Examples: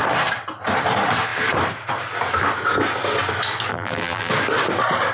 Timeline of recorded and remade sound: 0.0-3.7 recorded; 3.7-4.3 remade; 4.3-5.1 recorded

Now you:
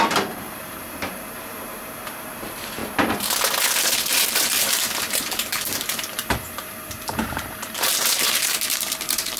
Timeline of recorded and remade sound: 0.0-2.8 remade; 2.8-4.6 recorded; 4.6-9.4 remade

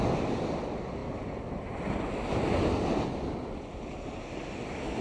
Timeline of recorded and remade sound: 0.0-5.0 recorded

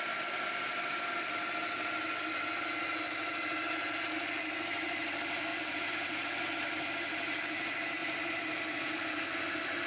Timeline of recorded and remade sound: 0.0-5.5 recorded; 5.5-6.0 remade; 6.0-8.0 recorded; 8.0-9.9 remade

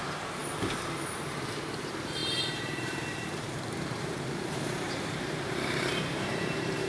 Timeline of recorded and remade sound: 0.0-6.9 remade

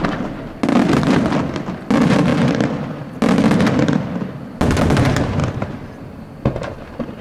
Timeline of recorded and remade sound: 0.0-2.3 recorded; 2.3-2.9 remade; 2.9-3.8 recorded; 3.8-5.0 remade; 5.0-7.2 recorded

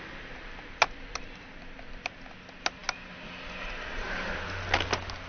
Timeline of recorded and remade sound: 0.0-5.3 recorded